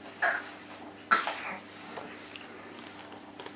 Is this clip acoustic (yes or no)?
yes